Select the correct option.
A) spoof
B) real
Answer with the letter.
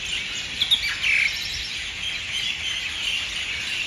B